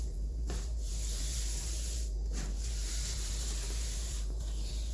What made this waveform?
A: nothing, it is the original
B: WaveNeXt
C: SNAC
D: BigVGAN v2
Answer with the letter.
D